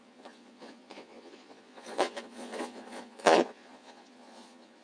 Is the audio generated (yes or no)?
yes